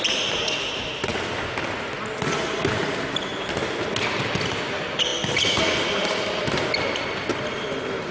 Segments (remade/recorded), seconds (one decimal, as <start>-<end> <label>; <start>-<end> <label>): 0.0-8.1 recorded